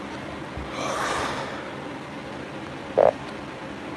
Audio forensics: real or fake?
real